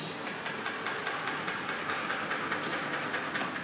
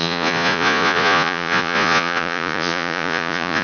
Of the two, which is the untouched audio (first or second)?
first